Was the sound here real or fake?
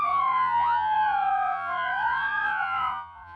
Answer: fake